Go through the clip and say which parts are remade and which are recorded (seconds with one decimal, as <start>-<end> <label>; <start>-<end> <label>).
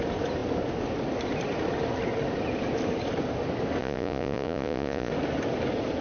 0.0-3.8 recorded; 3.8-5.1 remade; 5.1-6.0 recorded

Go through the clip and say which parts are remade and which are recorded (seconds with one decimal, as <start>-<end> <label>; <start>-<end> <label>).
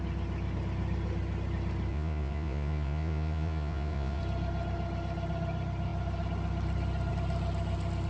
0.0-1.9 recorded; 1.9-4.2 remade; 4.2-8.1 recorded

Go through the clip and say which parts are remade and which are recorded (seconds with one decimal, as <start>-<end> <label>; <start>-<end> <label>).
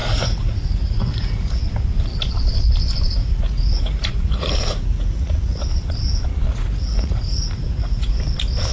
0.0-1.6 remade; 1.6-3.2 recorded; 3.2-5.6 remade; 5.6-6.5 recorded; 6.5-8.2 remade; 8.2-8.7 recorded